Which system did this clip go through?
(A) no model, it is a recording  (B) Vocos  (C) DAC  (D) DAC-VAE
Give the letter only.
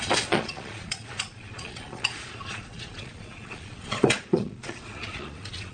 B